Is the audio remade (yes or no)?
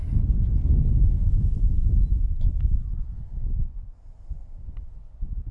no